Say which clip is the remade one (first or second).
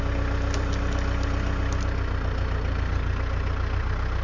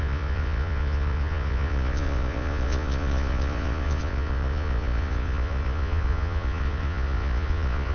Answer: second